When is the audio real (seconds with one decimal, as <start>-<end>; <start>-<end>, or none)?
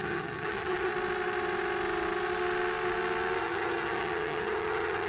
0.9-3.4